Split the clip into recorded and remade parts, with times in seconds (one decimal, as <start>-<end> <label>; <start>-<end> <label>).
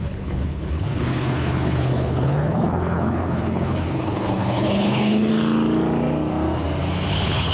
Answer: 0.0-5.3 remade; 5.3-7.1 recorded; 7.1-7.5 remade